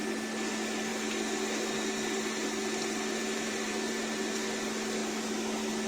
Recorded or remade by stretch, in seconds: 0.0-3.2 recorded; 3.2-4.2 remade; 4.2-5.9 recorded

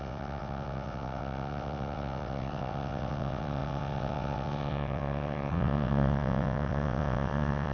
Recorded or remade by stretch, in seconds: 0.0-7.7 remade

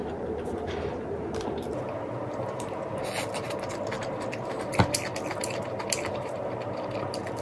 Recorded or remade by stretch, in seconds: 0.0-7.4 recorded

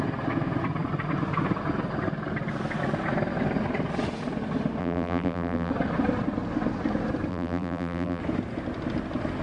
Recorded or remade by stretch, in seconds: 0.0-4.8 recorded; 4.8-5.7 remade; 5.7-7.3 recorded; 7.3-8.2 remade; 8.2-9.4 recorded

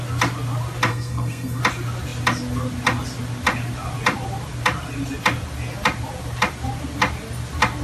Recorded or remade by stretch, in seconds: 0.0-0.9 recorded; 0.9-1.6 remade; 1.6-7.8 recorded

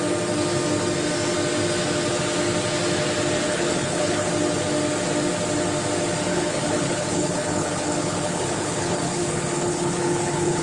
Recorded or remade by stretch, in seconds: 0.0-3.5 recorded; 3.5-4.3 remade; 4.3-6.3 recorded; 6.3-10.6 remade

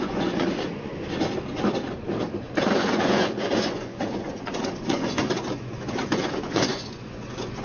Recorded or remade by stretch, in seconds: 0.0-0.9 remade; 0.9-2.4 recorded; 2.4-7.6 remade

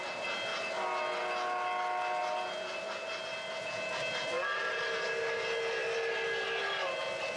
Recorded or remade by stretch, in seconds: 0.0-7.4 recorded